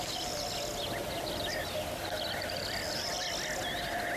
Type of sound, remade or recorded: recorded